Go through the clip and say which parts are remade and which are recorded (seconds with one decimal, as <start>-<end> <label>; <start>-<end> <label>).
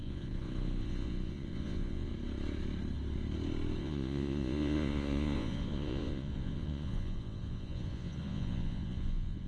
0.0-2.1 remade; 2.1-3.8 recorded; 3.8-9.5 remade